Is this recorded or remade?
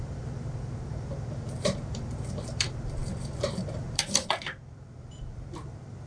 remade